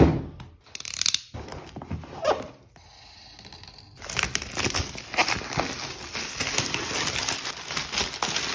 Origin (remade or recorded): recorded